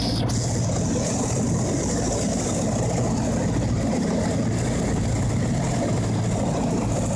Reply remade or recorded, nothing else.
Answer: recorded